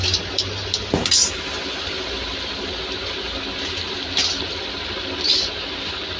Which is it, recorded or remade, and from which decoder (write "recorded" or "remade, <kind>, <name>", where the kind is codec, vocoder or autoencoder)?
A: recorded